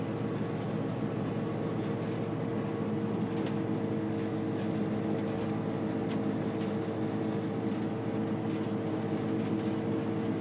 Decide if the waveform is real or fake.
real